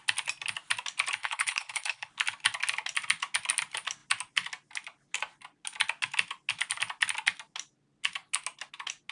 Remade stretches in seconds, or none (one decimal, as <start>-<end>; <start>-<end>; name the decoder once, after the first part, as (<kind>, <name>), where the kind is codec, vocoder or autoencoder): 1.2-2.1 (codec, HILCodec)